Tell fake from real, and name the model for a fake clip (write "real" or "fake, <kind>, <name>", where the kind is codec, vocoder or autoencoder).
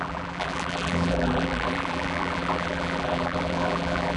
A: fake, vocoder, BigVGAN v2